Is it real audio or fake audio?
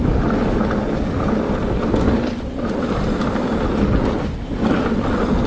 real